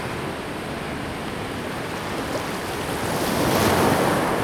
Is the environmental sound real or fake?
real